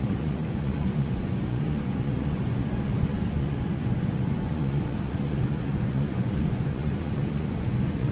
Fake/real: fake